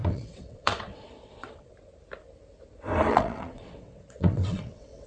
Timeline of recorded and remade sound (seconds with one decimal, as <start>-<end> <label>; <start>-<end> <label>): 0.0-1.7 remade; 1.7-3.1 recorded; 3.1-5.1 remade